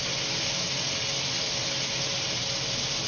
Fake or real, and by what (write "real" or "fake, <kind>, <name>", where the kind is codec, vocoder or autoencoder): real